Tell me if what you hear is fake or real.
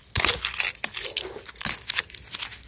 real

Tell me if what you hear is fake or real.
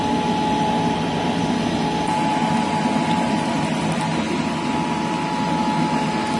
real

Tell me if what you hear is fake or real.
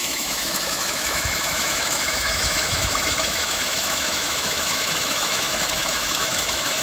fake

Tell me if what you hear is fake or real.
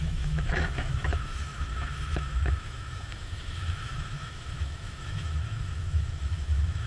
fake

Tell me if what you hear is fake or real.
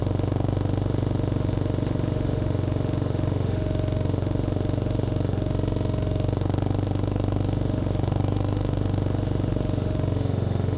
fake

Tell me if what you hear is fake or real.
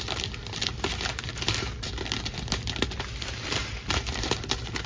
real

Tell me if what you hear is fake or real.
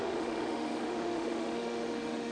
fake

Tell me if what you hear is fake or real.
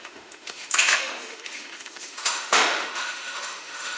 fake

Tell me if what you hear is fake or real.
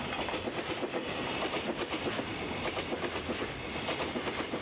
real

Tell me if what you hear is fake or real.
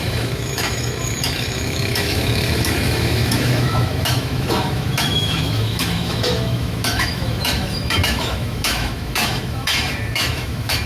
fake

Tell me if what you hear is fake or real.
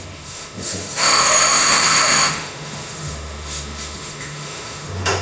fake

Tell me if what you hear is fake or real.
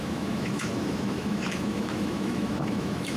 fake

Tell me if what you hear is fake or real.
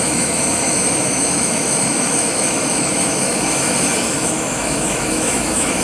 fake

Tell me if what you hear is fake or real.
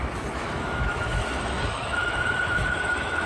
fake